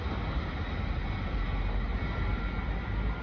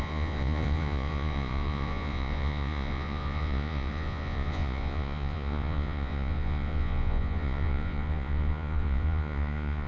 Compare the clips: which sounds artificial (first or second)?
second